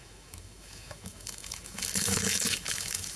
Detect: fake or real fake